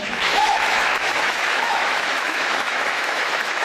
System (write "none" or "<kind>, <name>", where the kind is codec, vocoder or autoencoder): autoencoder, DAC-VAE